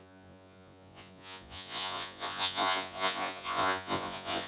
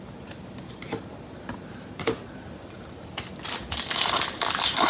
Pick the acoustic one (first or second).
second